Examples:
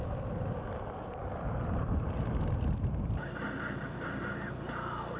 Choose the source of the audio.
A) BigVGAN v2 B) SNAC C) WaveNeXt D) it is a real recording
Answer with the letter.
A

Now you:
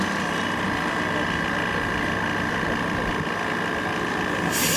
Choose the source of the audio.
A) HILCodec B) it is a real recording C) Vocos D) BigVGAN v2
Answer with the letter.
B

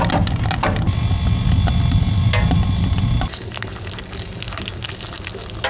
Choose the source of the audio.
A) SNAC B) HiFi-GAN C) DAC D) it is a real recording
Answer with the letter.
D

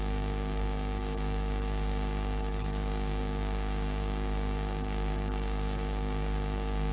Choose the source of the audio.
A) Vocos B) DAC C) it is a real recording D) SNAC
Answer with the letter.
B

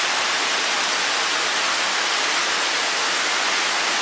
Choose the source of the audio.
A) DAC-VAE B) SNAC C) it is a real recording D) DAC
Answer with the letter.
C